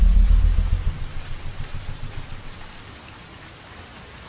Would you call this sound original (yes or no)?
yes